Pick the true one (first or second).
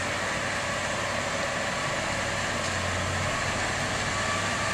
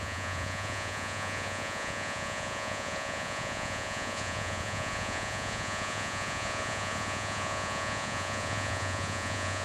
first